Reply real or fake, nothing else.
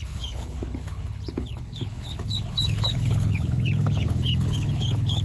fake